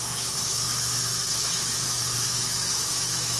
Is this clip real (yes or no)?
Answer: no